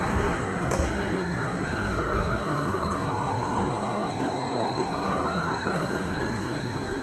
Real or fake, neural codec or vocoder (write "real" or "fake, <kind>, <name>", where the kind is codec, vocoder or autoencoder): fake, codec, SNAC